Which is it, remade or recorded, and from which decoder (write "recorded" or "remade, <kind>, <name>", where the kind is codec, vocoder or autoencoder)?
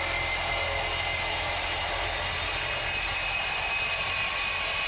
recorded